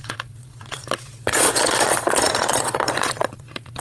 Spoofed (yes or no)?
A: yes